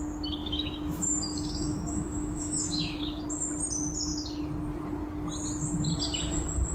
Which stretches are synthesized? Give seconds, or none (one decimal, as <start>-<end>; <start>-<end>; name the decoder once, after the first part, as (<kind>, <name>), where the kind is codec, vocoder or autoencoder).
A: 0.4-3.2 (autoencoder, DAC-VAE)